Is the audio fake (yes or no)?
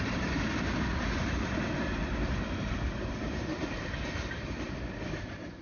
no